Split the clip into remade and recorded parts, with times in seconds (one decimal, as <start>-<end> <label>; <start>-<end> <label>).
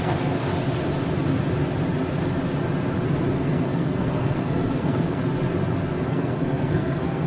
0.0-0.5 remade; 0.5-3.4 recorded; 3.4-5.2 remade; 5.2-6.1 recorded; 6.1-7.3 remade